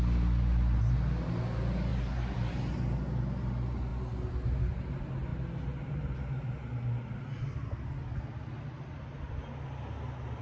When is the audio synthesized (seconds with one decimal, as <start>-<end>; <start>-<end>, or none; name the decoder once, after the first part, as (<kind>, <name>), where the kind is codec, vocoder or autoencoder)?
1.9-2.6 (vocoder, BigVGAN v2)